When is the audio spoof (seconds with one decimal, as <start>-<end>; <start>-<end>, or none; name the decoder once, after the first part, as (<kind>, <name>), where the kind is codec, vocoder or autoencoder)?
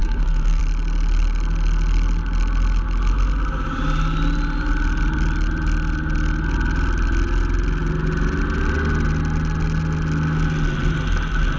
0.0-0.6 (codec, SNAC)